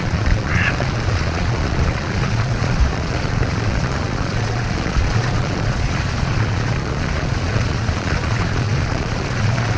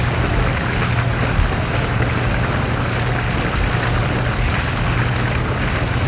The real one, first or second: second